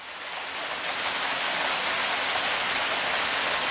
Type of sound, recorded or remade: recorded